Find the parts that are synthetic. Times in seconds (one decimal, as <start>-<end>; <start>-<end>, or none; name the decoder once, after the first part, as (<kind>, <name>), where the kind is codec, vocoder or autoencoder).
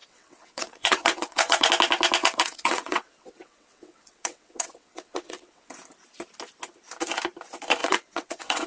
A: 0.0-1.7 (vocoder, WaveNeXt); 2.2-5.7; 7.8-8.7